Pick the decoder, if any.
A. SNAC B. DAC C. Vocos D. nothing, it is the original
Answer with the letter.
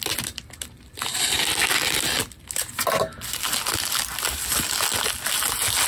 D